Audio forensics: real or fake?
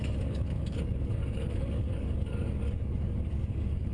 fake